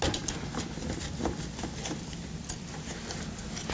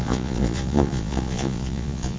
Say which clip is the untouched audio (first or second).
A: first